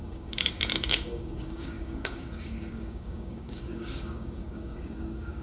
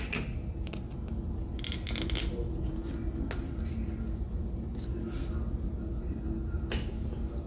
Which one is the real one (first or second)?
second